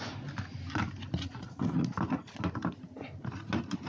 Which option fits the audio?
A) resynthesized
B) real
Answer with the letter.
B